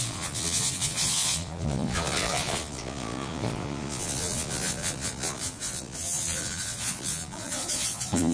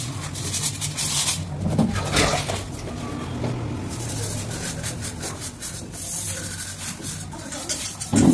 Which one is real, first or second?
second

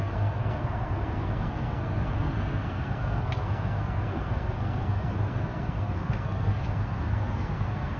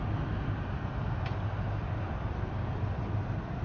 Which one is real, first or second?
second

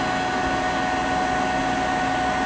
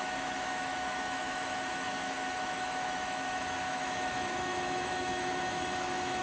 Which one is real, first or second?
first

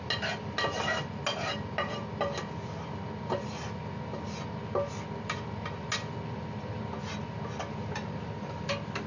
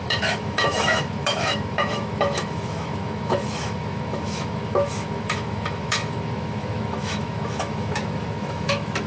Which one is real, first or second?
first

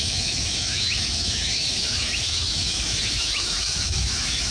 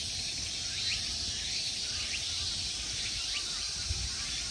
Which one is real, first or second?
second